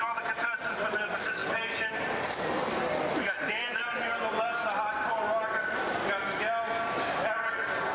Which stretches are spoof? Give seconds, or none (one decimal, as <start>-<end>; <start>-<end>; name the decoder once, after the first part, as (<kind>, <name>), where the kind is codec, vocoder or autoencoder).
none